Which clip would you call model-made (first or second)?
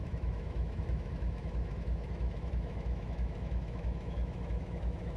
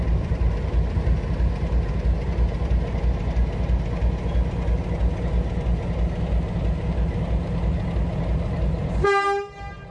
first